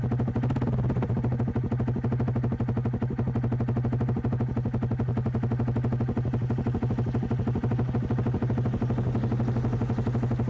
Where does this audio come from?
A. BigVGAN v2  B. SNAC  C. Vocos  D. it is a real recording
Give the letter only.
D